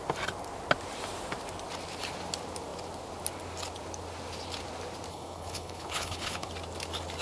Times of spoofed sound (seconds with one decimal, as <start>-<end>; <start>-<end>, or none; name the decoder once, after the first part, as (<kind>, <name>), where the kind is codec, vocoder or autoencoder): 5.1-6.5 (codec, HILCodec)